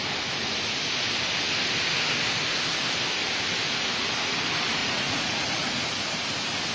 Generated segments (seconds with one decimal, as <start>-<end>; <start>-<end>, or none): 4.8-5.8